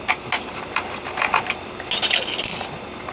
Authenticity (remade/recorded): recorded